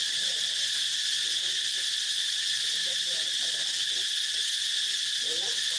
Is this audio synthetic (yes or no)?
yes